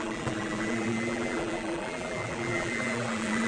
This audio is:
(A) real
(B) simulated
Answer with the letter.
B